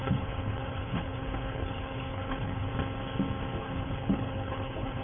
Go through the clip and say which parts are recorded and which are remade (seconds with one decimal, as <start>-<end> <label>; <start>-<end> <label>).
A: 0.0-2.7 remade; 2.7-3.6 recorded; 3.6-5.0 remade